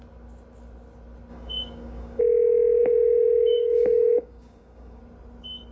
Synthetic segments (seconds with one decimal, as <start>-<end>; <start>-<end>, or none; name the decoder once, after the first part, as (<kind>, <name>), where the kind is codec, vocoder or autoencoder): 1.3-2.2 (codec, DAC); 2.8-5.0